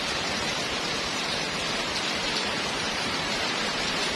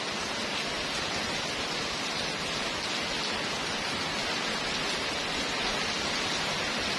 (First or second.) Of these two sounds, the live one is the second